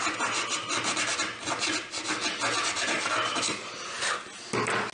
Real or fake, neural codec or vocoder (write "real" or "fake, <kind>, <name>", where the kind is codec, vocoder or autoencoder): real